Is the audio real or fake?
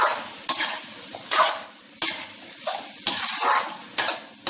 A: real